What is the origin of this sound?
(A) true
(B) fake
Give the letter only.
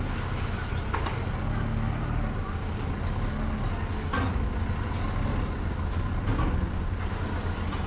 A